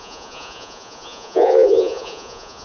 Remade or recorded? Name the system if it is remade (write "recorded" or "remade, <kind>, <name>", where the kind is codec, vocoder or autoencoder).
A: remade, vocoder, Vocos